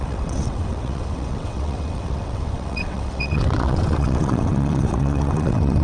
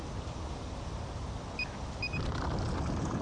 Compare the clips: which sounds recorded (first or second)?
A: second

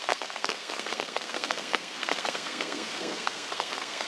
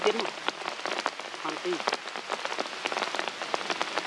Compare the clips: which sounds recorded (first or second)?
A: second